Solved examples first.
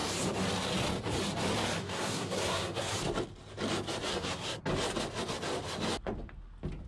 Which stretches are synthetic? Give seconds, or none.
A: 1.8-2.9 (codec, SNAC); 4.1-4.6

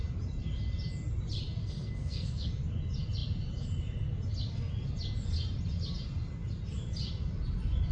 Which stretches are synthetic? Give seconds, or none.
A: 1.6-2.5 (codec, SNAC)

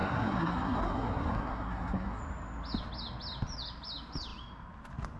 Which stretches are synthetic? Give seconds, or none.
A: 0.0-2.2 (codec, SNAC)